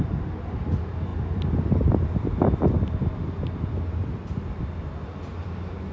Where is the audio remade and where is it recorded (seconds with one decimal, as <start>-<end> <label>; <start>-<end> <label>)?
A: 0.0-1.1 recorded; 1.1-4.6 remade; 4.6-5.3 recorded; 5.3-5.9 remade